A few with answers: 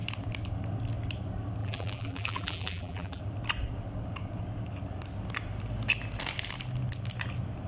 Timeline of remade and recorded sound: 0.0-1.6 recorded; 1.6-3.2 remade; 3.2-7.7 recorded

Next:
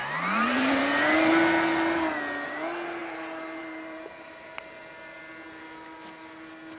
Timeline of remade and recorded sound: 0.0-0.8 remade; 0.8-3.0 recorded; 3.0-5.2 remade; 5.2-6.8 recorded

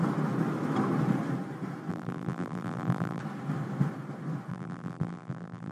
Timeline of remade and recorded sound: 0.0-1.9 recorded; 1.9-3.2 remade; 3.2-4.5 recorded; 4.5-5.7 remade

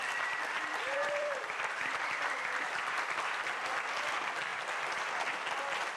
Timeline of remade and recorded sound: 0.0-3.6 remade; 3.6-6.0 recorded

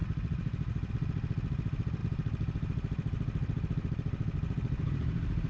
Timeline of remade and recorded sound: 0.0-0.9 remade; 0.9-2.0 recorded; 2.0-5.5 remade

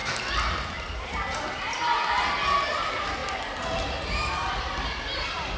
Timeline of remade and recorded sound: 0.0-1.7 remade; 1.7-5.6 recorded